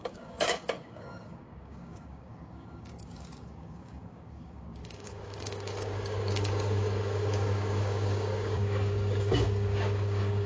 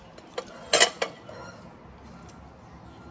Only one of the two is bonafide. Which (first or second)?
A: second